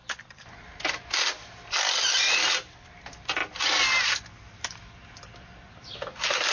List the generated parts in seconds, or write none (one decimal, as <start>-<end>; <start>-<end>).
0.0-3.4; 4.7-6.5